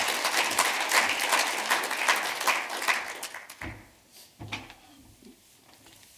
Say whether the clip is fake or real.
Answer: real